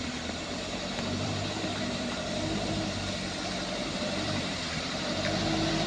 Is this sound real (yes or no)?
no